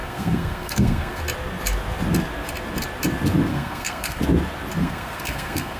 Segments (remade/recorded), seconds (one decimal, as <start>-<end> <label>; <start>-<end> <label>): 0.0-1.2 remade; 1.2-3.5 recorded; 3.5-4.2 remade; 4.2-4.8 recorded; 4.8-5.8 remade